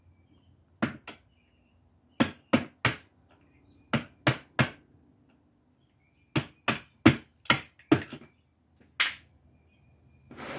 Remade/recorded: recorded